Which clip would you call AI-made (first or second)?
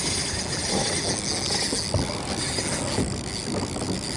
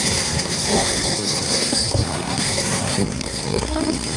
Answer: second